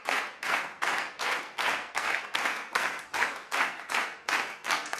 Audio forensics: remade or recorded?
remade